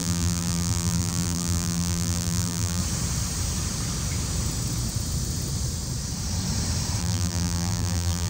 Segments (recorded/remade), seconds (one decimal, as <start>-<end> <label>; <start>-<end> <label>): 0.0-2.8 remade; 2.8-7.0 recorded; 7.0-8.3 remade